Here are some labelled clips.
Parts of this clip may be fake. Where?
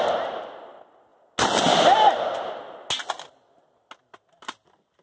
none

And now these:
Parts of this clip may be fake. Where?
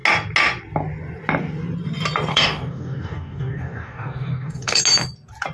2.3-4.8 (codec, DAC)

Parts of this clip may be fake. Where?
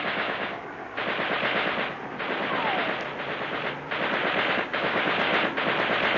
0.0-0.8 (codec, DAC); 4.5-5.3